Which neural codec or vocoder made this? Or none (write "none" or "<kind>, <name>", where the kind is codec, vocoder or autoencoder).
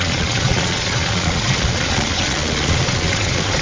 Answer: vocoder, Vocos